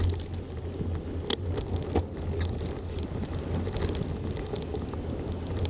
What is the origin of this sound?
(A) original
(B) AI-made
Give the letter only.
A